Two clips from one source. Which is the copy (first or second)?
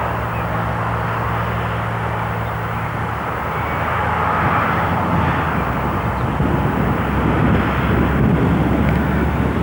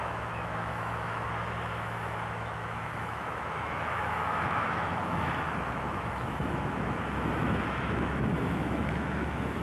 second